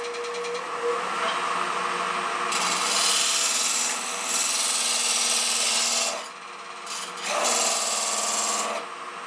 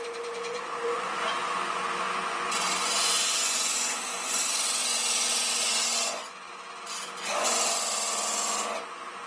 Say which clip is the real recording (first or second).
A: first